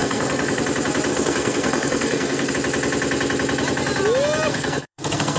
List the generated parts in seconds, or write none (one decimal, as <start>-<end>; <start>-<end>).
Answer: 0.0-0.6; 1.1-2.5; 4.5-5.4